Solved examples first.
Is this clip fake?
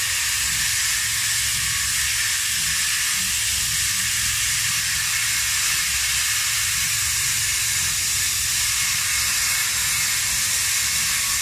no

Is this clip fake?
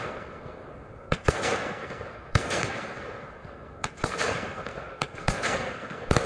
yes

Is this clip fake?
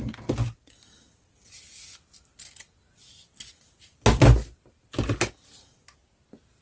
no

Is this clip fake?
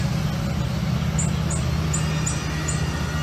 no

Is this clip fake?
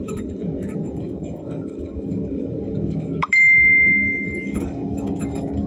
yes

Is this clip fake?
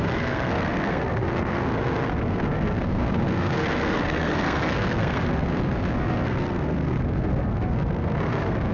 yes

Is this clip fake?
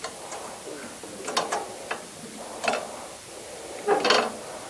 no